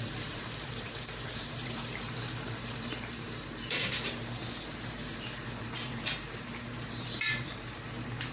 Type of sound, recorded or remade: remade